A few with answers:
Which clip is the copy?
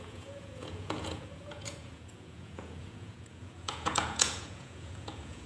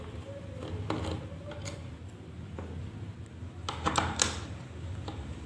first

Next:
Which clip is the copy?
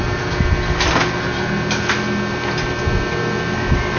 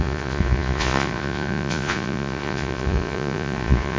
second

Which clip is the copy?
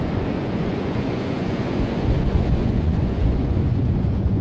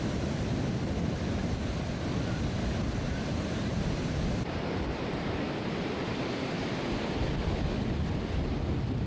first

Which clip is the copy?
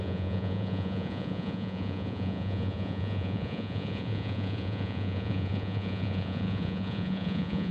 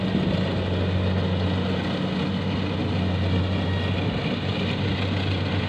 first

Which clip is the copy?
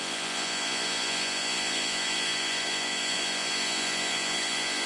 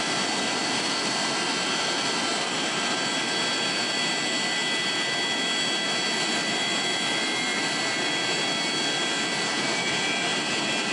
first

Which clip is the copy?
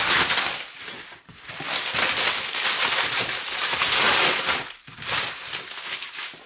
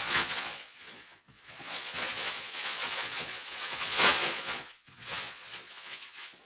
second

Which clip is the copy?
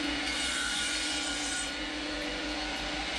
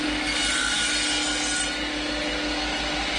first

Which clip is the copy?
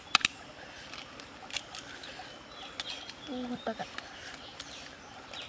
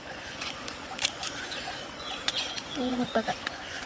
second